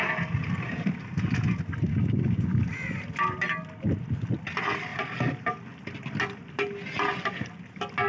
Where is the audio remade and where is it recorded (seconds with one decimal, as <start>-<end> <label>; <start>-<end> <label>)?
0.0-1.9 recorded; 1.9-2.6 remade; 2.6-8.1 recorded